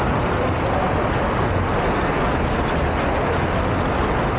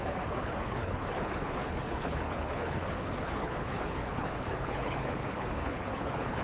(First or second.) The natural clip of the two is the first